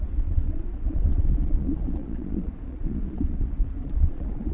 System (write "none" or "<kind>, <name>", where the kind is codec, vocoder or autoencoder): vocoder, Vocos